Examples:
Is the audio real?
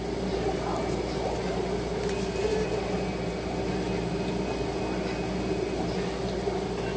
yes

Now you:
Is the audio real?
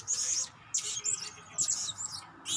yes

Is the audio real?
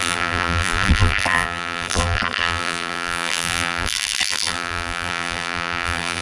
no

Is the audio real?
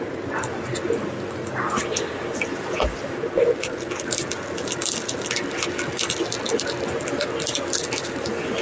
yes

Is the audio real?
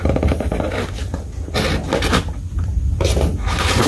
yes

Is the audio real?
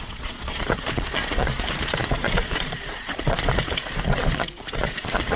no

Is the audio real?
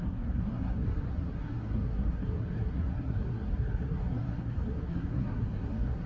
no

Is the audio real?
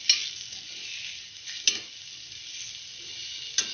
yes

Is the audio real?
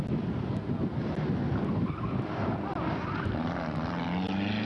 yes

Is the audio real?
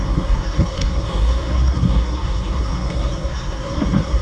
no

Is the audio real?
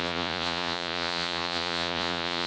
no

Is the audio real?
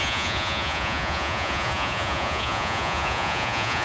no